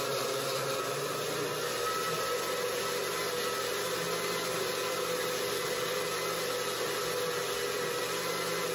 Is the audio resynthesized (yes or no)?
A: no